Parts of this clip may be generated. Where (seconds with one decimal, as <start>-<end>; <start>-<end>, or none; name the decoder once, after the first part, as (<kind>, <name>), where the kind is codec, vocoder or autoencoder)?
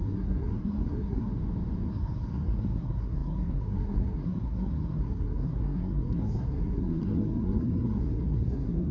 0.0-1.3 (codec, SNAC); 1.9-8.9